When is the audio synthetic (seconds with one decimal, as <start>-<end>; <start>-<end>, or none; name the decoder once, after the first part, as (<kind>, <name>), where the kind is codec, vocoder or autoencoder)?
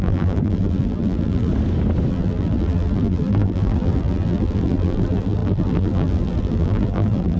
0.0-1.5 (vocoder, BigVGAN v2); 2.1-7.4